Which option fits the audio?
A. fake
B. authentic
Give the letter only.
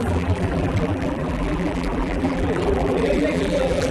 A